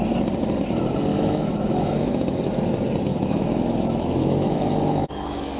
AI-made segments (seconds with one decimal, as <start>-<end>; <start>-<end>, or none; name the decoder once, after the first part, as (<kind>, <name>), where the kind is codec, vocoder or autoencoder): 1.1-2.4 (autoencoder, DAC-VAE); 3.1-5.6

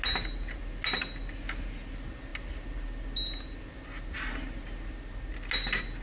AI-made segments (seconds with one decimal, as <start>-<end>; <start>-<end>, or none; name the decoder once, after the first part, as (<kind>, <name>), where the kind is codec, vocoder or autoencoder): none

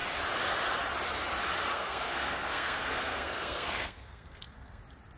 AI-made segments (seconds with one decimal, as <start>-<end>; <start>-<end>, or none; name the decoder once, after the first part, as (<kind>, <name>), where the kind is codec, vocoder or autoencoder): 1.7-4.8 (codec, SNAC)

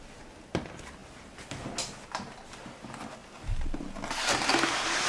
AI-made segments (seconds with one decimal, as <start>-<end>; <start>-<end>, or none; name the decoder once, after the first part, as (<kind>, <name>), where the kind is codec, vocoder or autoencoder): none